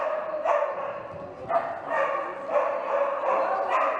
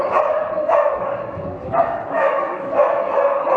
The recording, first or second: first